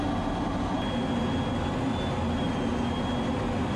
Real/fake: real